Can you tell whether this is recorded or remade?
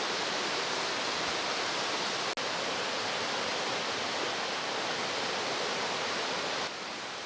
recorded